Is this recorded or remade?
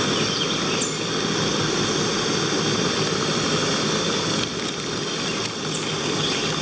recorded